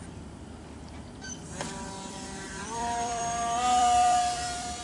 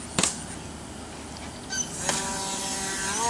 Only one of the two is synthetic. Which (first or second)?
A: first